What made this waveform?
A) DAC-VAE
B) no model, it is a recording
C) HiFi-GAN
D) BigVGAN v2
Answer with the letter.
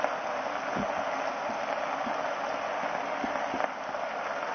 B